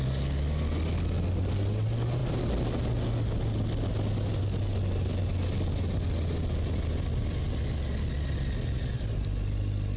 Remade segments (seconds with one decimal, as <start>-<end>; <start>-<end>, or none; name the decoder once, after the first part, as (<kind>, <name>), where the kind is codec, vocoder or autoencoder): none